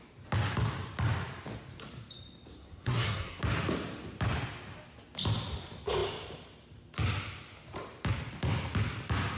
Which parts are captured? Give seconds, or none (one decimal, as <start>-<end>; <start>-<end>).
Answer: 0.0-2.5; 3.4-9.4